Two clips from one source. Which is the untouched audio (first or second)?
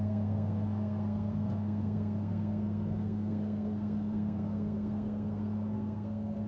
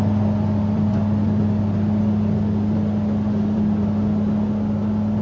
second